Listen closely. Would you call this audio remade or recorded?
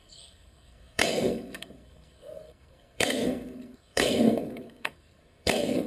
remade